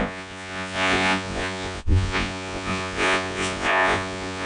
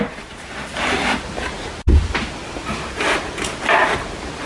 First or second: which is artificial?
first